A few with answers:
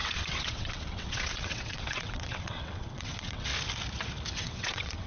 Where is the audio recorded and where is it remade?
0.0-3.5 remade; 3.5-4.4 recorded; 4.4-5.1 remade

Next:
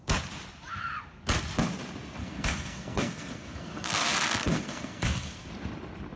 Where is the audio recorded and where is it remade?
0.0-2.2 recorded; 2.2-5.5 remade; 5.5-6.2 recorded

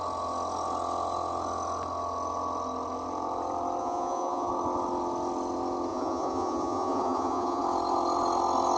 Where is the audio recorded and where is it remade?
0.0-3.8 recorded; 3.8-4.5 remade; 4.5-5.9 recorded; 5.9-7.6 remade; 7.6-8.8 recorded